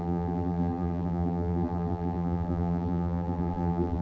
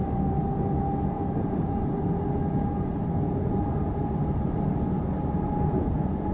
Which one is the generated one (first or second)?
first